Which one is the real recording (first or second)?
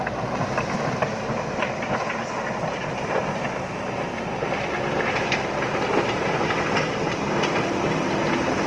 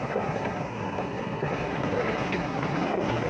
first